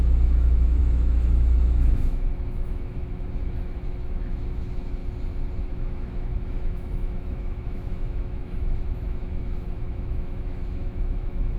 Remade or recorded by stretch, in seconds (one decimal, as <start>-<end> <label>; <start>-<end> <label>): 0.0-5.0 remade; 5.0-5.6 recorded; 5.6-11.6 remade